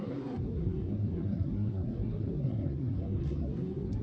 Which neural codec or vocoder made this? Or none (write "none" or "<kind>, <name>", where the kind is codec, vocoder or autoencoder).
codec, SNAC